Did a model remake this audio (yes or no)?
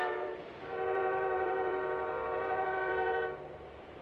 yes